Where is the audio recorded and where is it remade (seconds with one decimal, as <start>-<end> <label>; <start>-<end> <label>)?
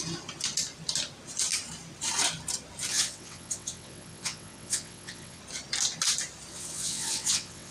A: 0.0-2.9 recorded; 2.9-5.4 remade; 5.4-6.5 recorded; 6.5-7.7 remade